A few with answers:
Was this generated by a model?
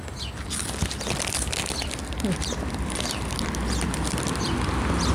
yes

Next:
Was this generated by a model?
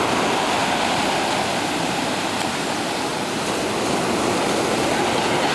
no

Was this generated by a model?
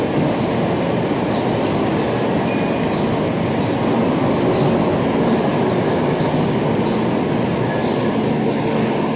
no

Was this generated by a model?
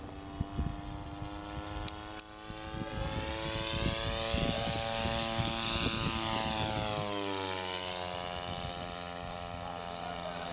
no